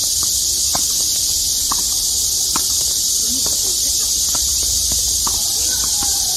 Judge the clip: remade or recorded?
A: remade